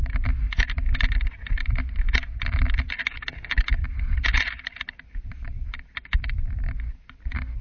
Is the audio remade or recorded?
recorded